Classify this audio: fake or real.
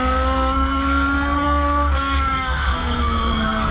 fake